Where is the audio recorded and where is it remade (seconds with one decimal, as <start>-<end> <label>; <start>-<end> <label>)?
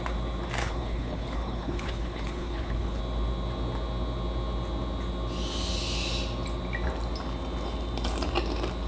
0.0-0.6 recorded; 0.6-3.0 remade; 3.0-8.9 recorded